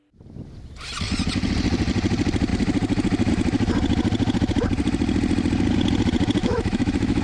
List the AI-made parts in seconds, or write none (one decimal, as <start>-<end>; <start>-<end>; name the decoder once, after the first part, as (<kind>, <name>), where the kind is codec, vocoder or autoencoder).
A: 6.4-7.2 (autoencoder, DAC-VAE)